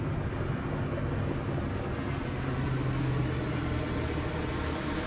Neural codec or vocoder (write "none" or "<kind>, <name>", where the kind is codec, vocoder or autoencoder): none